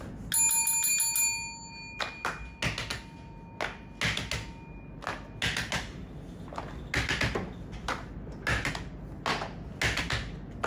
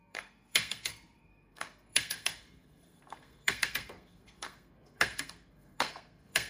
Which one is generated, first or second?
second